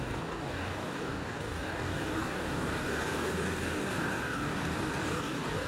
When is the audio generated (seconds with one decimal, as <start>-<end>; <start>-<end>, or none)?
0.0-5.7